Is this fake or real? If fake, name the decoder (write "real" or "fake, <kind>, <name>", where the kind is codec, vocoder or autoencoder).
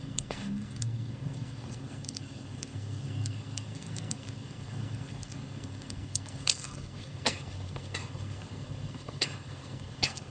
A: fake, codec, SNAC